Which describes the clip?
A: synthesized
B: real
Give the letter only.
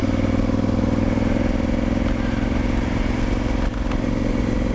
B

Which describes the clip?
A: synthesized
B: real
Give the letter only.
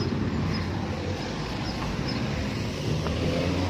B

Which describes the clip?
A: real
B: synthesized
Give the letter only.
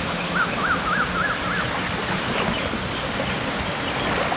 A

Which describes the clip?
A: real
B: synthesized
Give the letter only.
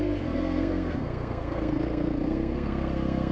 B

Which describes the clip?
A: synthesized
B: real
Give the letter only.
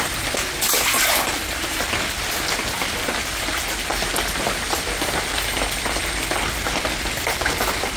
B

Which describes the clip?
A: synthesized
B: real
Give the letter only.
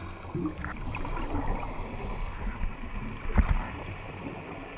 B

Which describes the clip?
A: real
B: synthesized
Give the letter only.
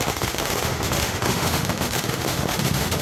B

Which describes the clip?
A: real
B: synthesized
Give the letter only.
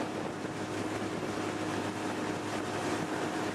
A